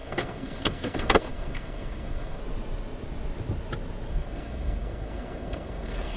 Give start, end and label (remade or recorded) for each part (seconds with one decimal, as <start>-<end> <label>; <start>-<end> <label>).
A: 0.0-2.4 remade; 2.4-4.1 recorded; 4.1-6.2 remade